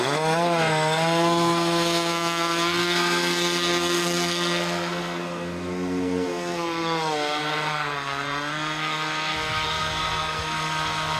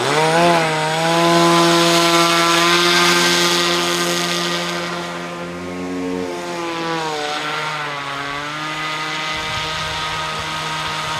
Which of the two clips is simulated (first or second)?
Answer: first